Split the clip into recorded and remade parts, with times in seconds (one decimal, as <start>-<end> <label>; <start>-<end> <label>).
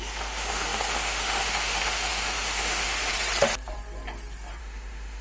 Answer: 0.0-3.1 remade; 3.1-4.6 recorded; 4.6-5.2 remade